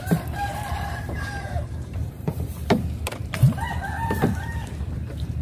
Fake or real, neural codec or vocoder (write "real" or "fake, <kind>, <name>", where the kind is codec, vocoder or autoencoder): fake, vocoder, BigVGAN v2